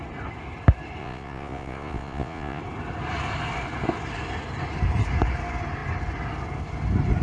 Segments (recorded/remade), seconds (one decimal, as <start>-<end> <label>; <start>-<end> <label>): 0.0-1.0 recorded; 1.0-2.6 remade; 2.6-7.2 recorded